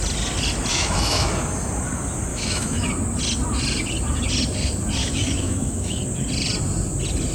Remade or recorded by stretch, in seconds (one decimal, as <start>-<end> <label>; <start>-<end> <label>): 0.0-0.7 recorded; 0.7-1.3 remade; 1.3-2.3 recorded; 2.3-2.9 remade; 2.9-5.0 recorded; 5.0-6.0 remade; 6.0-7.3 recorded